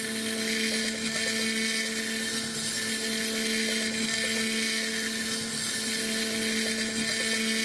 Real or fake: real